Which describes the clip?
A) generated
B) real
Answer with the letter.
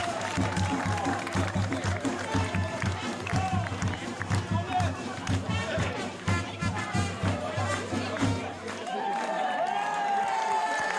A